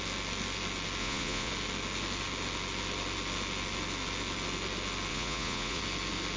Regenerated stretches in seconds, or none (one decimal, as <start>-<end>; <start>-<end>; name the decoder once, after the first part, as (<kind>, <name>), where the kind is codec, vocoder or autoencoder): 1.0-1.5 (vocoder, Vocos); 5.1-5.8